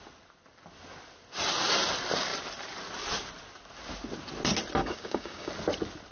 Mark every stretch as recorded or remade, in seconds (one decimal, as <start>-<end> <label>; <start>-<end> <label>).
0.0-4.8 recorded; 4.8-5.5 remade; 5.5-6.1 recorded